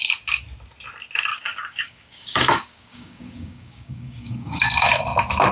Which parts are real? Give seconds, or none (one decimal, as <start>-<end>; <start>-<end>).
0.0-1.3; 4.6-5.5